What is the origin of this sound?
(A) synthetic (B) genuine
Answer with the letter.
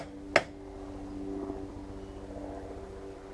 B